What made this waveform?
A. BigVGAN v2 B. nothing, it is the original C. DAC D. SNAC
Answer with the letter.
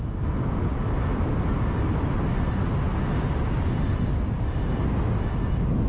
B